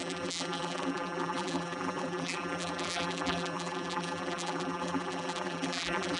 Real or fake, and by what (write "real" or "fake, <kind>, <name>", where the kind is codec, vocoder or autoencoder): fake, vocoder, BigVGAN v2